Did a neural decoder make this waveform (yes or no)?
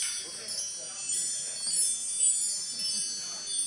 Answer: no